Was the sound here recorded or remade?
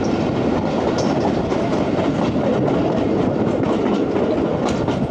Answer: recorded